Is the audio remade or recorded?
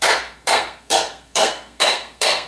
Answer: remade